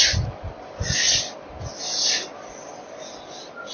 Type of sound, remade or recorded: recorded